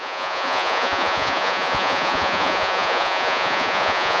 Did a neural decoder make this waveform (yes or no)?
yes